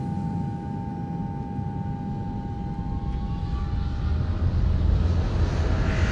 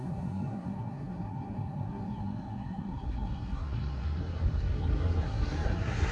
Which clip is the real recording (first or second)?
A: first